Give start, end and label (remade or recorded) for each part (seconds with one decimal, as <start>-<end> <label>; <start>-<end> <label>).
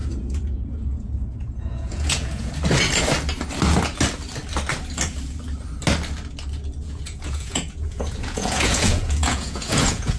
0.0-2.5 remade; 2.5-6.8 recorded; 6.8-10.2 remade